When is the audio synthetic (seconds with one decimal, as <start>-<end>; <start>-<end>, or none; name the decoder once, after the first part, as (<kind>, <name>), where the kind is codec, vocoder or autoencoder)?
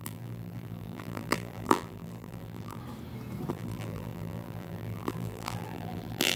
0.0-2.8 (vocoder, BigVGAN v2); 3.5-6.4